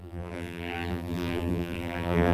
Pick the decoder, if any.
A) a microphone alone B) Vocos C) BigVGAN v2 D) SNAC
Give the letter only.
C